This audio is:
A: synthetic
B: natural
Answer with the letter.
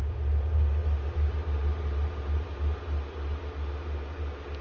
B